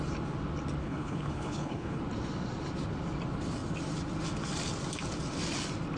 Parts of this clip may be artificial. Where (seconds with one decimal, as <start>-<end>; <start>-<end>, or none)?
0.8-2.0